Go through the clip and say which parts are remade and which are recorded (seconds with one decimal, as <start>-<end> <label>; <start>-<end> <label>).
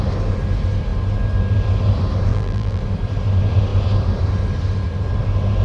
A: 0.0-2.3 recorded; 2.3-2.8 remade; 2.8-5.6 recorded